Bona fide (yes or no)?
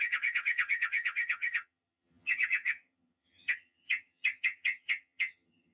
no